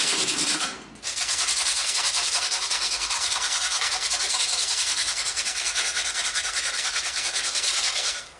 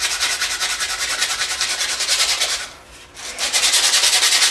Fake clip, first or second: first